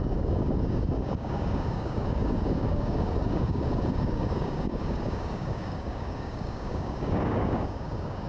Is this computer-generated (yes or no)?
yes